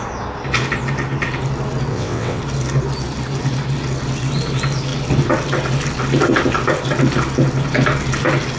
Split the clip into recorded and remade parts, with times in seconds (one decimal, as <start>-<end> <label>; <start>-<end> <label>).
0.0-1.9 recorded; 1.9-2.4 remade; 2.4-8.6 recorded